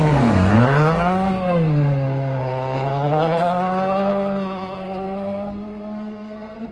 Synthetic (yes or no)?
yes